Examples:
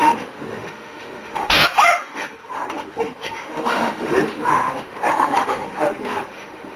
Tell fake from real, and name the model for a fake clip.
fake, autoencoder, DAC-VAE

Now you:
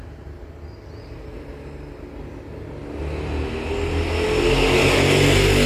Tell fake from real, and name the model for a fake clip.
real